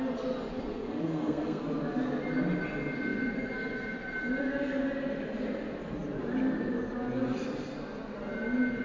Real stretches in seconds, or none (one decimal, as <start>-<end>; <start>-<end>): 0.0-0.5; 1.6-8.8